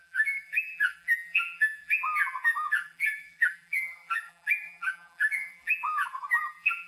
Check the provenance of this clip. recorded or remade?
remade